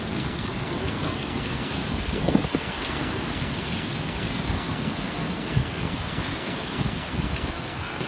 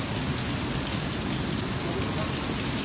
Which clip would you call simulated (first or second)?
first